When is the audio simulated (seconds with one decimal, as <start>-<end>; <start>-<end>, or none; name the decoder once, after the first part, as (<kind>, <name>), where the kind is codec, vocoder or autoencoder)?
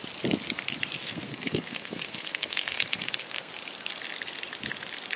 1.0-3.5 (codec, SNAC)